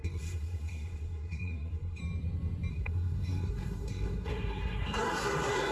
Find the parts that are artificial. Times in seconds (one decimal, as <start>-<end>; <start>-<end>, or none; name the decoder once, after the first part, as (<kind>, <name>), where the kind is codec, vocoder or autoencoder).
0.0-2.0 (codec, SNAC); 2.7-5.7